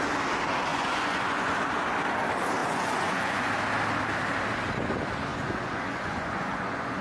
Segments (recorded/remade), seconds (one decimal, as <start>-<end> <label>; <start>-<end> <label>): 0.0-0.7 recorded; 0.7-1.5 remade; 1.5-2.6 recorded; 2.6-3.5 remade; 3.5-5.3 recorded; 5.3-7.0 remade